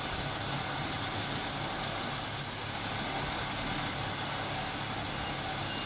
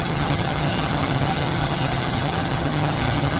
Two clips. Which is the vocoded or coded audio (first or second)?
second